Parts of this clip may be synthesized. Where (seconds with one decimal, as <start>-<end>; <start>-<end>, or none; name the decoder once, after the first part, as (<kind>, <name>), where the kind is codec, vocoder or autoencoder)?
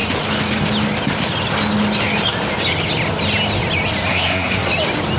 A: 4.1-4.7 (codec, SNAC)